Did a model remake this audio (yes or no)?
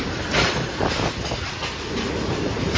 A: no